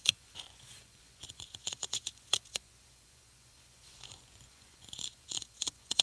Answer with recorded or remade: remade